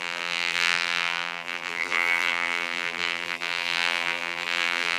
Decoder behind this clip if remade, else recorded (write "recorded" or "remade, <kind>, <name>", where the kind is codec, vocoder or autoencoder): remade, vocoder, BigVGAN v2